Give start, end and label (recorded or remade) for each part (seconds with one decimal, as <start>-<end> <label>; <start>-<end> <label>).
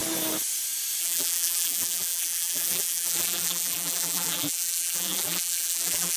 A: 0.0-1.0 recorded; 1.0-6.2 remade